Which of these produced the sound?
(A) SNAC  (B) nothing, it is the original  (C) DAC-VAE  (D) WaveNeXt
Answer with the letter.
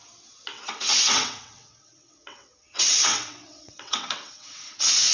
D